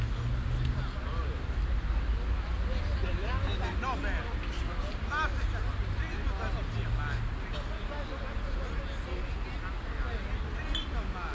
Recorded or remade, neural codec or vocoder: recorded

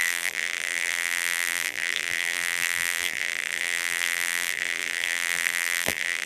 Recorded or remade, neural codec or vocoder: remade, vocoder, BigVGAN v2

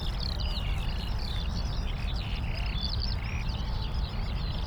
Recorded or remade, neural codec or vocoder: recorded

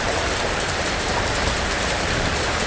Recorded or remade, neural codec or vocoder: remade, vocoder, BigVGAN v2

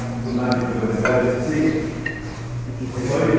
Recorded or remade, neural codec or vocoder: remade, vocoder, BigVGAN v2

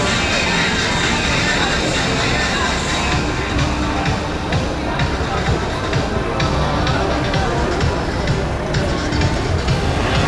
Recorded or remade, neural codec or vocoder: recorded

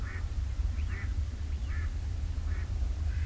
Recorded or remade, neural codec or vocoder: remade, vocoder, BigVGAN v2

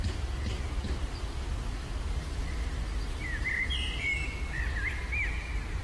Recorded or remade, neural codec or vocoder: recorded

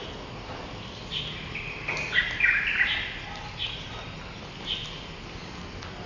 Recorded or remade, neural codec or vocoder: recorded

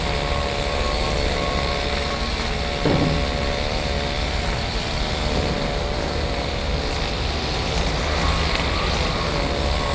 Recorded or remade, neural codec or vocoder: recorded